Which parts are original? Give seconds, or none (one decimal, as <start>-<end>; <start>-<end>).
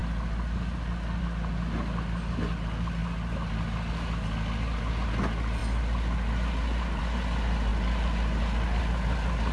0.0-9.5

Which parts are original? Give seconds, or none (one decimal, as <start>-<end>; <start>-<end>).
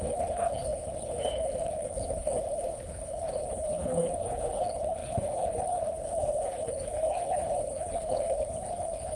none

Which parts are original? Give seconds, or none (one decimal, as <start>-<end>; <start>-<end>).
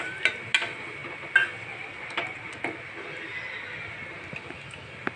0.0-5.2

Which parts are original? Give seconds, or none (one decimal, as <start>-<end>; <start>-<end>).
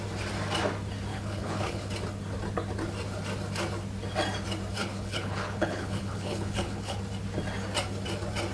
0.0-1.1; 1.9-4.8; 7.0-8.5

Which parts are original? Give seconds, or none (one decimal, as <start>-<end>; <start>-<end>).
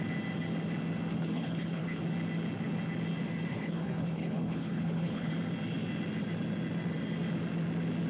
0.0-1.1; 2.0-3.5; 5.3-8.1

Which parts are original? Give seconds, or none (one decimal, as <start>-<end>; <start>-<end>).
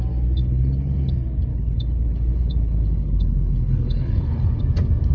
0.0-0.4; 1.1-1.5; 4.6-5.1